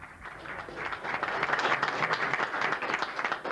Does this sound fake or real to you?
real